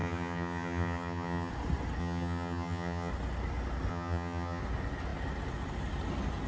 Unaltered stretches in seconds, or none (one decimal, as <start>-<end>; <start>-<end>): 1.5-2.0; 3.1-3.9; 4.6-6.5